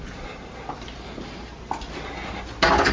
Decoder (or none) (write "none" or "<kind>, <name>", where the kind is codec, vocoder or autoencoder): none